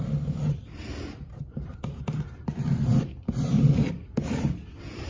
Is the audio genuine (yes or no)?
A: no